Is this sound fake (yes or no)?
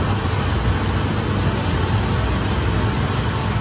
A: no